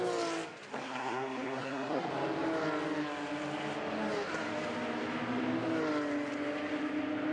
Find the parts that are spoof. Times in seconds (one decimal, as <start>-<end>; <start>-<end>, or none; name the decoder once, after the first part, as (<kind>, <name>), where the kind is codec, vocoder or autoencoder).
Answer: 0.7-2.1 (codec, SNAC)